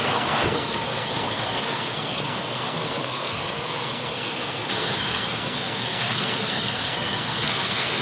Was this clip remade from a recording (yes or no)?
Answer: yes